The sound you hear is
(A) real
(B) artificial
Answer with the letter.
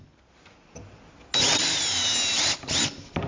A